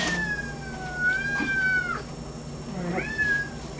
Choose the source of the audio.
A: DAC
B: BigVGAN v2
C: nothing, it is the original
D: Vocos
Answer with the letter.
C